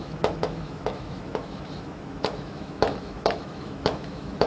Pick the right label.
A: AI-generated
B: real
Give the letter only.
A